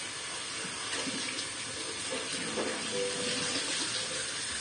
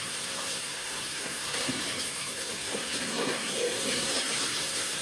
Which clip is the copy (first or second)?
second